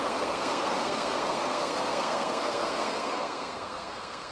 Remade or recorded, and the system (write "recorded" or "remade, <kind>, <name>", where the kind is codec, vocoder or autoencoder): remade, codec, SNAC